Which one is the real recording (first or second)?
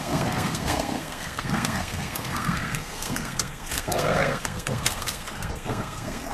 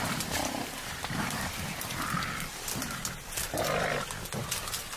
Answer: second